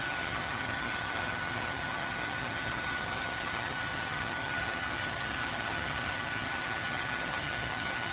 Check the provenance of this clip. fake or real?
fake